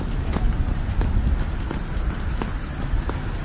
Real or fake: real